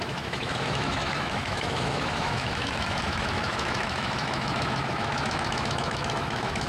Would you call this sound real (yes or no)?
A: no